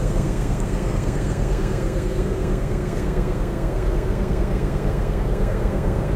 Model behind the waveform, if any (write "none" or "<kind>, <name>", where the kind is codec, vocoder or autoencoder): codec, SNAC